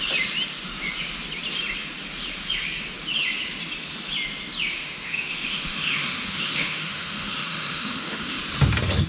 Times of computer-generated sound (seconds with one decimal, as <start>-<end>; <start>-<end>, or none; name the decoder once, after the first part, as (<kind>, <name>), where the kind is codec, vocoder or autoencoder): 4.7-8.4 (autoencoder, DAC-VAE)